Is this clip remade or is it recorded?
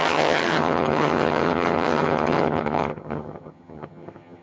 remade